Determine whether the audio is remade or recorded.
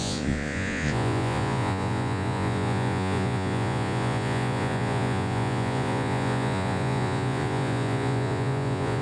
remade